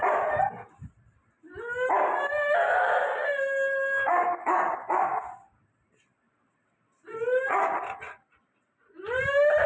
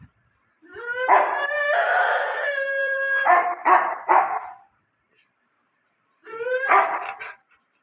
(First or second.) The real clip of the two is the first